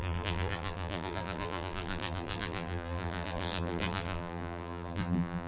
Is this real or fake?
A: fake